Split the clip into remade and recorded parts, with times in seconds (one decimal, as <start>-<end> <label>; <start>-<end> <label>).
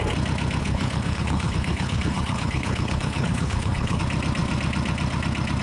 0.0-0.6 recorded; 0.6-4.0 remade; 4.0-5.6 recorded